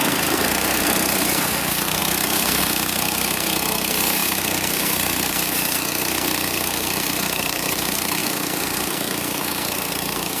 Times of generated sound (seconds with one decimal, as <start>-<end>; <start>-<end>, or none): 0.0-10.4